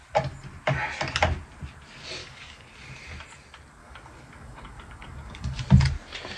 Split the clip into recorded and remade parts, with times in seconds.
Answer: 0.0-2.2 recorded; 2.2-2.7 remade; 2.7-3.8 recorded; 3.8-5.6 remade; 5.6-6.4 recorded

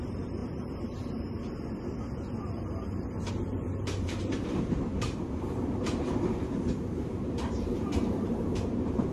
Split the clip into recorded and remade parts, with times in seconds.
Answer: 0.0-0.4 remade; 0.4-3.3 recorded; 3.3-9.1 remade

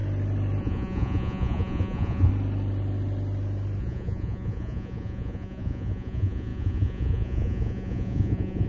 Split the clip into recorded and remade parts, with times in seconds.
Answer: 0.0-0.6 recorded; 0.6-2.3 remade; 2.3-3.8 recorded; 3.8-8.7 remade

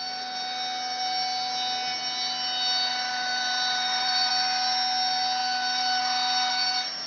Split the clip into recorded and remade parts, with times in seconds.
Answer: 0.0-2.9 recorded; 2.9-4.3 remade; 4.3-7.1 recorded

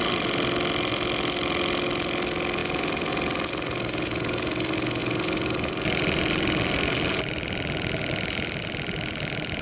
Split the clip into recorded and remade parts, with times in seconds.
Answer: 0.0-9.6 recorded

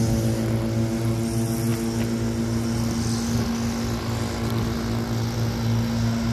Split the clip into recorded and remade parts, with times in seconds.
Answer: 0.0-6.3 recorded

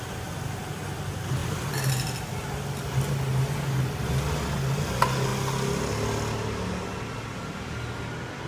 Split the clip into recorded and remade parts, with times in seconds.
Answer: 0.0-8.5 recorded

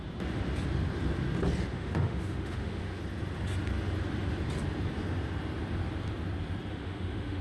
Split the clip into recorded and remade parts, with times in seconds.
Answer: 0.0-1.7 recorded; 1.7-3.0 remade; 3.0-6.7 recorded; 6.7-7.4 remade